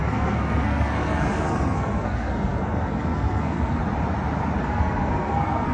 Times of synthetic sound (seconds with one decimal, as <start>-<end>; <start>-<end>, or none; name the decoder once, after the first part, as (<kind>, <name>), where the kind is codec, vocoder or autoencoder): 0.0-3.8 (codec, SNAC); 4.6-5.7